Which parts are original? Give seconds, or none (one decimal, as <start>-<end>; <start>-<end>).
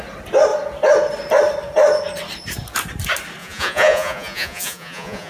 0.0-3.4